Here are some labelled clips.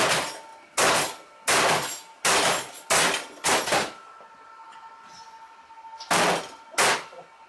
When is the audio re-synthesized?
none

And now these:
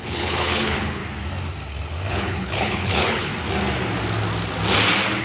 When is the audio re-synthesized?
0.0-1.0 (codec, HILCodec); 2.1-3.3

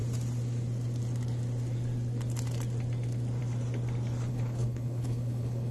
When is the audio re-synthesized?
4.3-5.7 (codec, HILCodec)

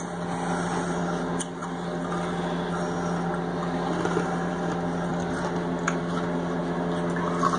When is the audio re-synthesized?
none

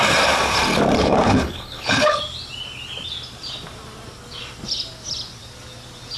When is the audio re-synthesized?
1.0-2.2 (codec, HILCodec)

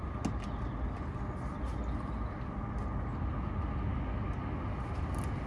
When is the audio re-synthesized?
none